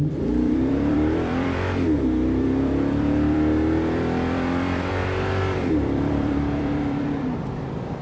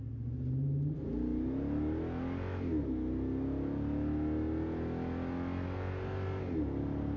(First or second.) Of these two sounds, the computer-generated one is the first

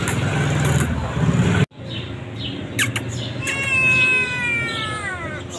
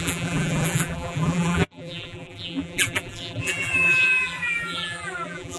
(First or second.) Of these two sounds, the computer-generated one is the second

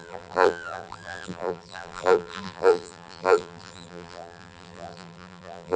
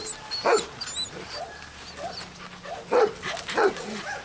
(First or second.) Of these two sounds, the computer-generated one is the first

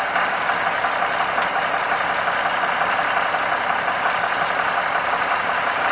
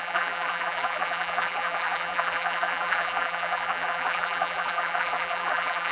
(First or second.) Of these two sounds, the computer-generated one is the second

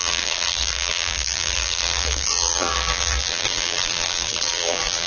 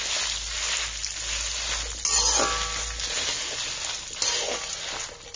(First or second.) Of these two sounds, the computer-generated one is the first